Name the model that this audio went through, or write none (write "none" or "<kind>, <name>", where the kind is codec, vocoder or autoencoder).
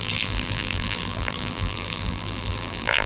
vocoder, BigVGAN v2